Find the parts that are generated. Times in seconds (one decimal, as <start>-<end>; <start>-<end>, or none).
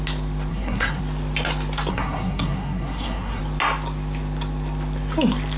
0.5-1.0; 1.9-3.4